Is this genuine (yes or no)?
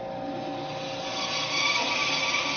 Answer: yes